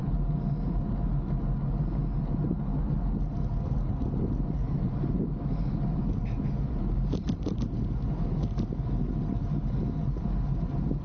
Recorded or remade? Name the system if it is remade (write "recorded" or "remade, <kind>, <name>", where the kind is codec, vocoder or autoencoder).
recorded